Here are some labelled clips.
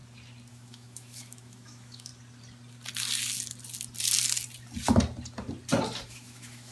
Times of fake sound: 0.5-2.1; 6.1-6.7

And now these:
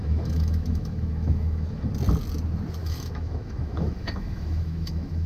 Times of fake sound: 0.0-1.9; 2.8-5.3

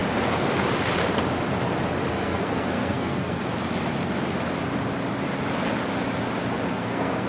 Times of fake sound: 2.1-3.4; 6.7-7.3